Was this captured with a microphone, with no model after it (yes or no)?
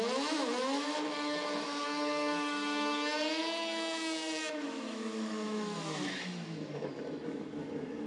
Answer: no